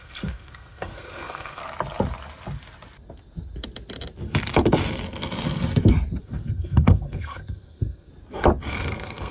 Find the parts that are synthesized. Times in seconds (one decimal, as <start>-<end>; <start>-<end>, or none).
0.0-1.6; 6.2-8.1; 8.7-9.3